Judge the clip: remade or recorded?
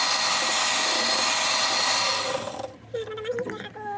recorded